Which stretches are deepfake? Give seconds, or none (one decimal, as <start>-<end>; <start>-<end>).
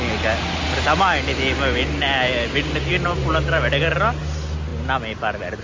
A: none